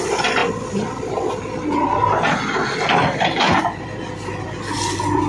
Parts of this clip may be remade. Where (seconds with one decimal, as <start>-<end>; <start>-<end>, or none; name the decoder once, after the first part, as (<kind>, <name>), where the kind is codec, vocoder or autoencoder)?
none